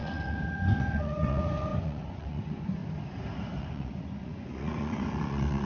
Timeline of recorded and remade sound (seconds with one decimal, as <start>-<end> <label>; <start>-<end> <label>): 0.0-2.8 remade; 2.8-3.6 recorded; 3.6-5.7 remade